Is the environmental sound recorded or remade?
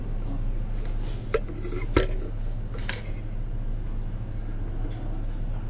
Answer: recorded